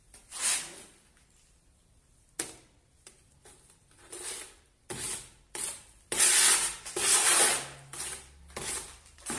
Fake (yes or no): no